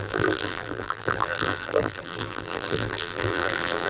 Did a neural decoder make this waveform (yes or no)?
yes